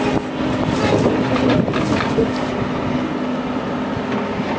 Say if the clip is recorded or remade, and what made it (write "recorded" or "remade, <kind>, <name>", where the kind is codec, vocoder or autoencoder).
recorded